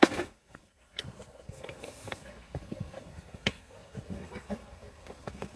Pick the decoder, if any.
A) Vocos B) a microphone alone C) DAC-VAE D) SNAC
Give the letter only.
D